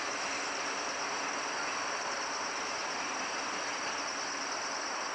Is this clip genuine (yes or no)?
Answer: yes